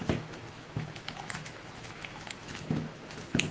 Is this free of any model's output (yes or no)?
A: no